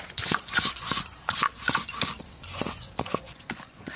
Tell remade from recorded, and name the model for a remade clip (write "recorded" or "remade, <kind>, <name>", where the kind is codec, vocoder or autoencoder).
remade, vocoder, Vocos